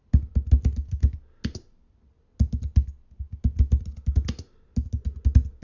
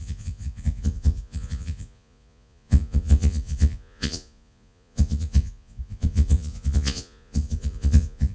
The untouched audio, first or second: first